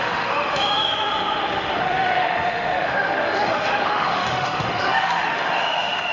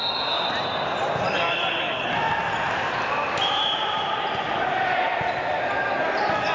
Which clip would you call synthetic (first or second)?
first